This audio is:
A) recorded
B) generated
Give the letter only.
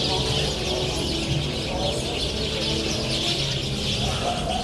A